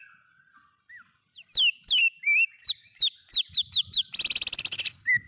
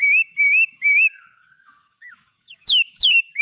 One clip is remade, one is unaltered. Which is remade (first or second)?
second